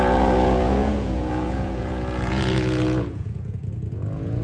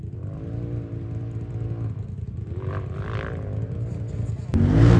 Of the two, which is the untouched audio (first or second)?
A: second